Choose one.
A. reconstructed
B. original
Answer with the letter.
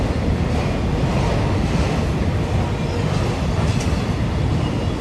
B